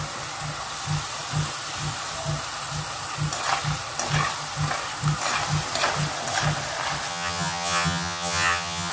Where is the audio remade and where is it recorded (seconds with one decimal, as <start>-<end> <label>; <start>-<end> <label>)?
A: 0.0-7.1 recorded; 7.1-8.9 remade